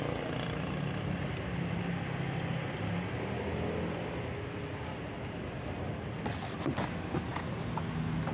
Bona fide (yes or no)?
yes